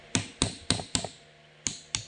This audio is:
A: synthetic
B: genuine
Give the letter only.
B